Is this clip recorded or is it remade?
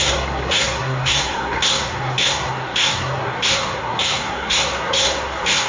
remade